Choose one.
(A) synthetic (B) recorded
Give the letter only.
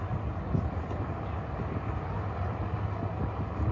B